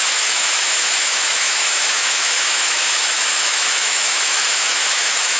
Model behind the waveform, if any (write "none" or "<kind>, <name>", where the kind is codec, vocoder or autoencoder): autoencoder, DAC-VAE